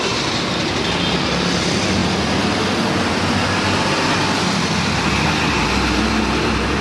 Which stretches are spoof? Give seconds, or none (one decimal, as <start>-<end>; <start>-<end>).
none